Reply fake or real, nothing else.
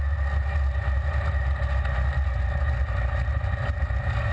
real